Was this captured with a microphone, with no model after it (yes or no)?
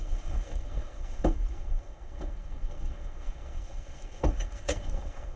no